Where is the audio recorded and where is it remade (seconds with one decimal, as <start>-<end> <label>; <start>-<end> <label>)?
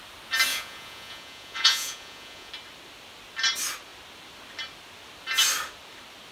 0.0-0.5 recorded; 0.5-2.5 remade; 2.5-6.3 recorded